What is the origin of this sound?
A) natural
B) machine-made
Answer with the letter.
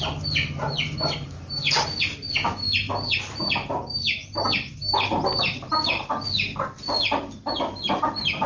A